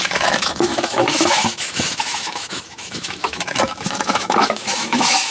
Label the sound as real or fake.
fake